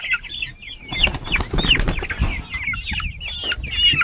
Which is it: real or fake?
real